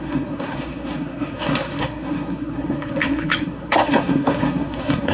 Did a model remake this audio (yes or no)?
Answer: yes